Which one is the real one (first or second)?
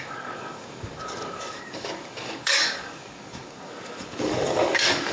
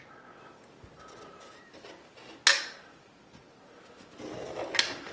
second